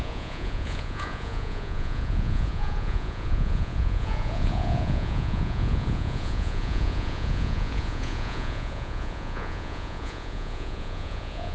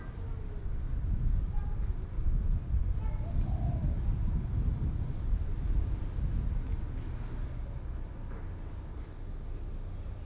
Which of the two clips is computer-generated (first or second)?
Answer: first